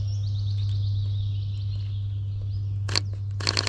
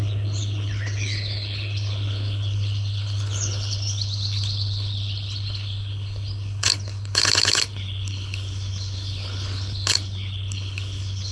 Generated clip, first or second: second